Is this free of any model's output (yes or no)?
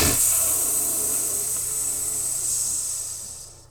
yes